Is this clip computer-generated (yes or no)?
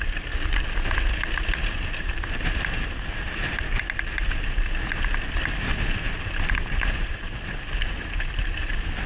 no